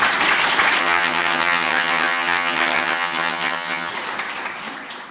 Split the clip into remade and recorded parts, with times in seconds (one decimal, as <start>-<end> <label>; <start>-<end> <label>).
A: 0.0-0.8 recorded; 0.8-3.9 remade; 3.9-5.1 recorded